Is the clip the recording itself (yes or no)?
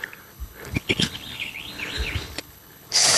no